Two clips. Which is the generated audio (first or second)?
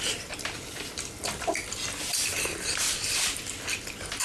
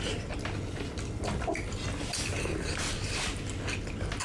first